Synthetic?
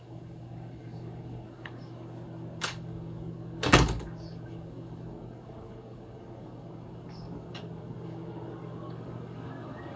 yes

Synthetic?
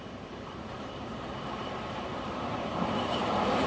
yes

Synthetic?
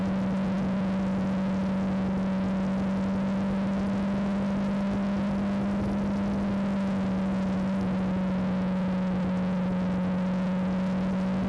no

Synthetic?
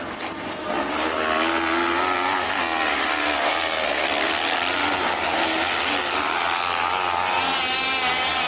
no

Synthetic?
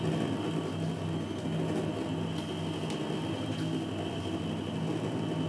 no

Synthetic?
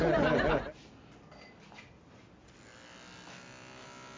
no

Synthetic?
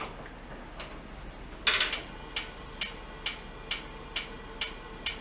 no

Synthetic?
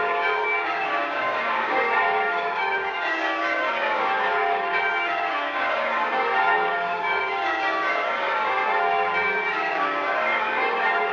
yes